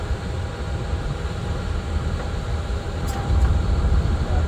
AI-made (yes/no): no